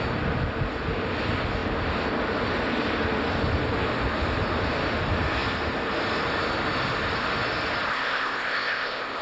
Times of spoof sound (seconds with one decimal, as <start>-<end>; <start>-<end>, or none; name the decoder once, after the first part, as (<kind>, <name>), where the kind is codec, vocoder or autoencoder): 7.9-9.2 (codec, ZipCodec)